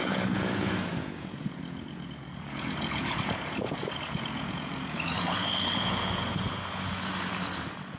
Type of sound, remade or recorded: remade